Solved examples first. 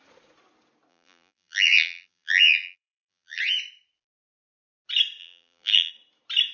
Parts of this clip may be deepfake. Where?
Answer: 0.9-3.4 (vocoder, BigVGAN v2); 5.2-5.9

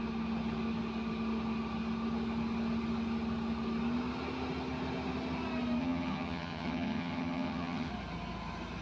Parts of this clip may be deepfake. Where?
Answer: 5.8-7.9 (vocoder, HiFi-GAN)

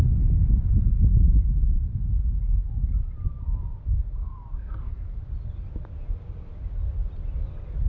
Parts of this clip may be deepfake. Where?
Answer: 4.2-5.2 (codec, SNAC)

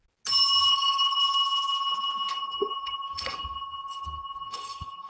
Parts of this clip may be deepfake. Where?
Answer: 0.7-1.2 (codec, SNAC); 2.3-5.1